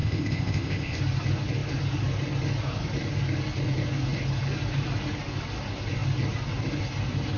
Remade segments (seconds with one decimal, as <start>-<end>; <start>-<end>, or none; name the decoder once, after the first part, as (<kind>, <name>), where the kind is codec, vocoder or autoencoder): 0.0-1.0 (codec, ZipCodec)